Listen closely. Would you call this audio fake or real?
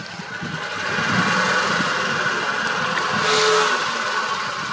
real